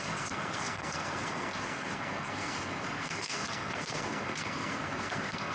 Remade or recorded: remade